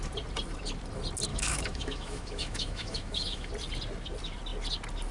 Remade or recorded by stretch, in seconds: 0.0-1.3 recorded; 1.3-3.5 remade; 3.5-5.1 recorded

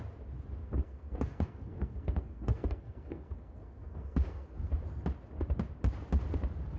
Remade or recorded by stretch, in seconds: 0.0-0.6 recorded; 0.6-4.7 remade; 4.7-6.8 recorded

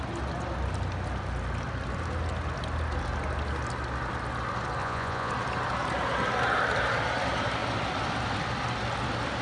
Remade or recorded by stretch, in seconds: 0.0-4.8 recorded; 4.8-5.3 remade; 5.3-9.4 recorded

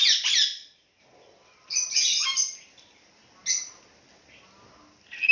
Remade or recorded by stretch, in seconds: 0.0-5.3 recorded

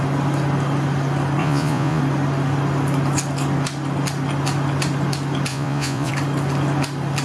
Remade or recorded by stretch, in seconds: 0.0-1.4 recorded; 1.4-2.0 remade; 2.0-5.5 recorded; 5.5-6.1 remade; 6.1-7.2 recorded